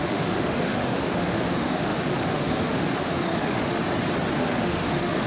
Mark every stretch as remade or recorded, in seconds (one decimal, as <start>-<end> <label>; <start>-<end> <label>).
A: 0.0-3.8 remade; 3.8-4.3 recorded; 4.3-5.3 remade